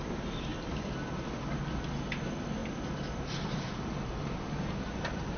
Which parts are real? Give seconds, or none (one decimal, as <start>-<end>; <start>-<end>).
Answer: 0.5-2.2; 2.6-3.3